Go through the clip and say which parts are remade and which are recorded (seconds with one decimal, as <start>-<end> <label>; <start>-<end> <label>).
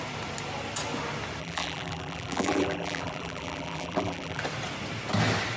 0.0-1.4 recorded; 1.4-4.4 remade; 4.4-5.6 recorded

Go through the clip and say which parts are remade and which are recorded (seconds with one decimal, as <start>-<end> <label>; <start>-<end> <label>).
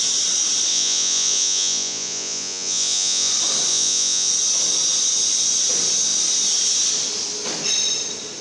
0.0-0.7 recorded; 0.7-3.3 remade; 3.3-3.7 recorded; 3.7-4.3 remade; 4.3-8.4 recorded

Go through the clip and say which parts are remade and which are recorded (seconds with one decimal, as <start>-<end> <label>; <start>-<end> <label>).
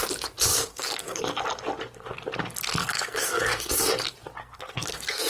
0.0-0.5 recorded; 0.5-1.2 remade; 1.2-2.8 recorded; 2.8-3.7 remade; 3.7-4.4 recorded; 4.4-5.3 remade